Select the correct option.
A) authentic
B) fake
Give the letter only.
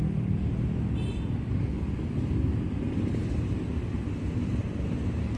A